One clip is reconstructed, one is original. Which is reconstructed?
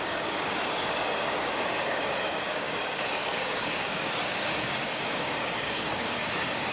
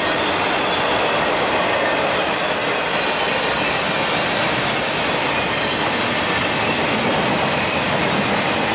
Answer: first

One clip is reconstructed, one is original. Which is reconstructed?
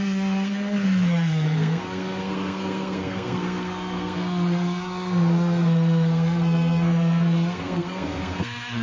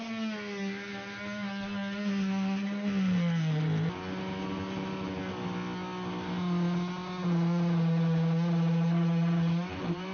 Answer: first